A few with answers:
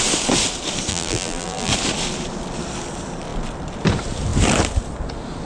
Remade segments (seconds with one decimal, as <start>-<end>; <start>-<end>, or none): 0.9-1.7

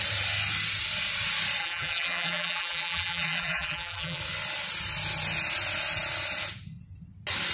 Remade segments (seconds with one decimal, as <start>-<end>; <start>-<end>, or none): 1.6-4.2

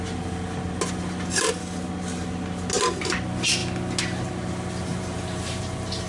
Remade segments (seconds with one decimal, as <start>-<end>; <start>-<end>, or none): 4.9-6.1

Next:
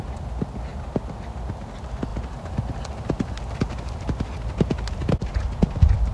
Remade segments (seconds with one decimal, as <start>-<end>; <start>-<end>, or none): 0.7-1.5